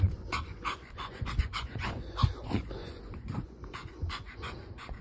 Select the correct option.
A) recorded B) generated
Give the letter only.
B